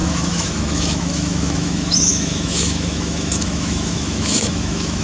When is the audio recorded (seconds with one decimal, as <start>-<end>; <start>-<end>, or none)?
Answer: none

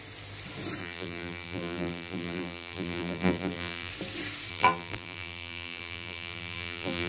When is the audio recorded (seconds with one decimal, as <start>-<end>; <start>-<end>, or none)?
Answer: 0.0-0.8; 3.9-4.5

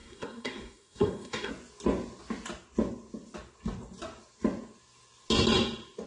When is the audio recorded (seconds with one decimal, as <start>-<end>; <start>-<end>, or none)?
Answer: 1.5-6.1

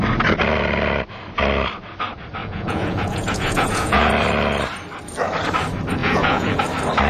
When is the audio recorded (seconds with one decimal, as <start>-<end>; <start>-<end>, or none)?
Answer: 0.0-2.4; 4.1-6.0; 6.6-7.1

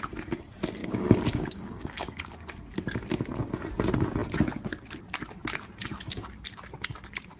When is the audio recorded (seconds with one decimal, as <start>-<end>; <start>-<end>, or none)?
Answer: 0.0-0.8; 2.5-7.4

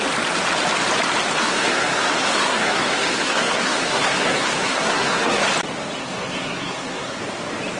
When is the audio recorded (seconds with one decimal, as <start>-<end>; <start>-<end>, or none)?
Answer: 0.0-1.4; 5.4-6.0; 7.2-7.8

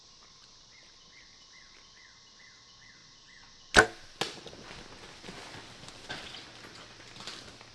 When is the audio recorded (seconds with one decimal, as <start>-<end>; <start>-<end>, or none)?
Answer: 0.0-7.7